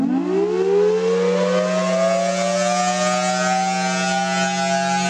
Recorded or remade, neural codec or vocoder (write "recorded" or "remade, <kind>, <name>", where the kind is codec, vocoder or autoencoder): recorded